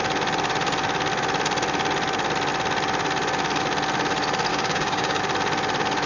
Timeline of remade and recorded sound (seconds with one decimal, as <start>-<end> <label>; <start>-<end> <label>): 0.0-4.5 recorded; 4.5-5.2 remade; 5.2-6.1 recorded